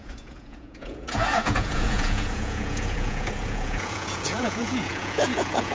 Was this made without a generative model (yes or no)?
no